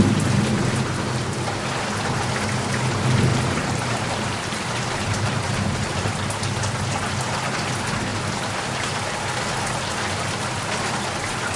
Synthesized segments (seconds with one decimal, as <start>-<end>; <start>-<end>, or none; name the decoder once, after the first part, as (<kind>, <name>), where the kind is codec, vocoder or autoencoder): 3.3-6.1 (vocoder, BigVGAN v2)